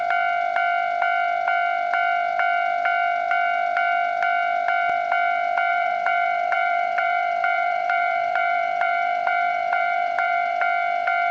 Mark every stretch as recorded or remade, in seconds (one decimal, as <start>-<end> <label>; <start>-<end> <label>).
0.0-5.7 recorded; 5.7-10.5 remade; 10.5-11.3 recorded